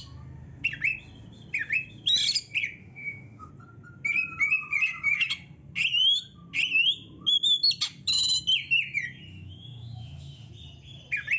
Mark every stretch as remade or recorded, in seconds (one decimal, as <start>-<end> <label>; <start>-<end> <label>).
0.0-2.8 recorded; 2.8-3.5 remade; 3.5-9.3 recorded; 9.3-10.5 remade; 10.5-11.4 recorded